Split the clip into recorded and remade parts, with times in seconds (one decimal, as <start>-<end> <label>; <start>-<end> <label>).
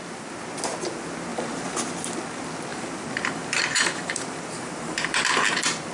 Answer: 0.0-1.3 recorded; 1.3-1.9 remade; 1.9-2.7 recorded; 2.7-5.3 remade; 5.3-5.9 recorded